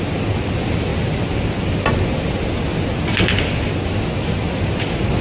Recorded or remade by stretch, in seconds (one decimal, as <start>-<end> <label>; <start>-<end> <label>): 0.0-5.2 recorded

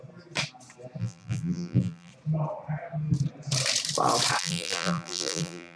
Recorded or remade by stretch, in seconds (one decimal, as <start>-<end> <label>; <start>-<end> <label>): 0.0-1.0 recorded; 1.0-2.1 remade; 2.1-4.4 recorded; 4.4-5.8 remade

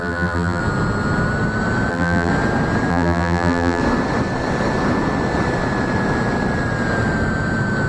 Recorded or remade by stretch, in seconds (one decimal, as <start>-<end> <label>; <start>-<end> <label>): 0.0-0.6 remade; 0.6-1.9 recorded; 1.9-2.3 remade; 2.3-2.9 recorded; 2.9-3.8 remade; 3.8-7.9 recorded

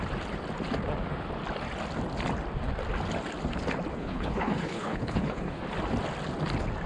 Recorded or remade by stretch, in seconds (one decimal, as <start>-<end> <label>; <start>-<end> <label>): 0.0-3.9 recorded; 3.9-5.6 remade; 5.6-6.9 recorded